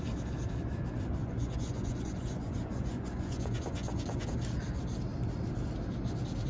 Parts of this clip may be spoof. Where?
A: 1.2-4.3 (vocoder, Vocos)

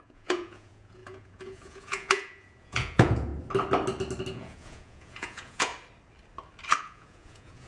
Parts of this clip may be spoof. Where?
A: 0.0-3.3 (vocoder, Vocos); 4.3-5.7; 6.8-7.7

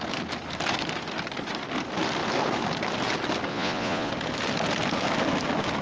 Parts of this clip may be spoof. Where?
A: 3.5-4.1 (vocoder, Vocos)

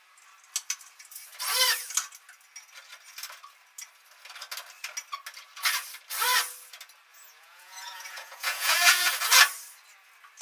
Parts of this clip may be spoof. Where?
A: 7.1-9.1 (vocoder, Vocos)